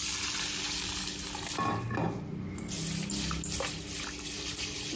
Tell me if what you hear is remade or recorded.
recorded